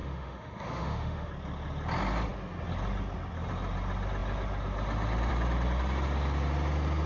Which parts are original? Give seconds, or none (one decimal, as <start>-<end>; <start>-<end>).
1.3-7.1